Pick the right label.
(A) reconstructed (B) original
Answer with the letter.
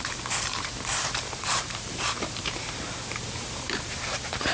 A